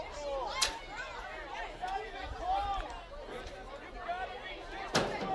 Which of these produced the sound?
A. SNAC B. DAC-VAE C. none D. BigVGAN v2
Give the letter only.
C